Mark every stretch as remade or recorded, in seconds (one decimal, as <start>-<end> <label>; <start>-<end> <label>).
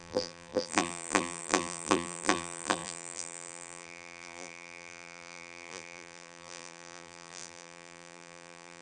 0.0-8.8 remade